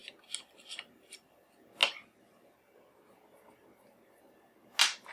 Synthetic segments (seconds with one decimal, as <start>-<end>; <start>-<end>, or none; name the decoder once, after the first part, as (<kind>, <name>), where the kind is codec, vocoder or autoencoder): none